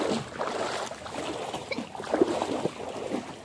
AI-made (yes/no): no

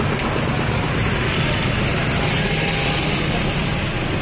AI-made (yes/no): no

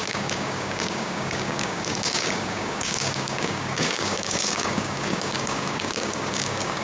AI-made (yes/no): yes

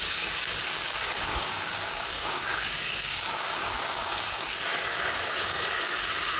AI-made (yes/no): yes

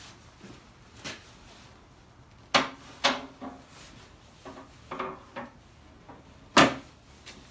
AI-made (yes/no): no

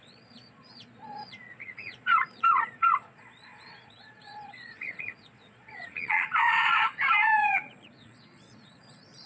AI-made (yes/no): yes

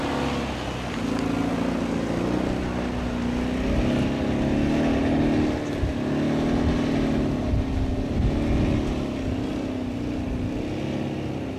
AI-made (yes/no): no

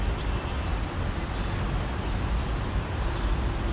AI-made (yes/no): no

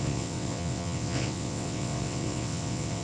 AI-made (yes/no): yes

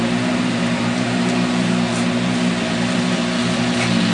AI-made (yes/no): no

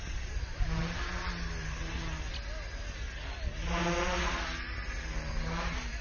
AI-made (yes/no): no